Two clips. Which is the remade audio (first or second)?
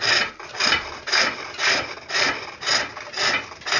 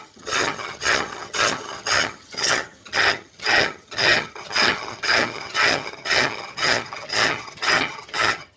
second